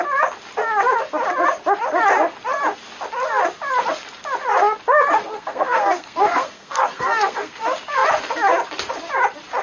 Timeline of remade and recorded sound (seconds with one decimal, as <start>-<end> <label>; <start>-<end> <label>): 0.0-5.2 recorded; 5.2-7.6 remade; 7.6-9.6 recorded